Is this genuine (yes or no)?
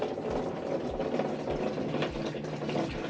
yes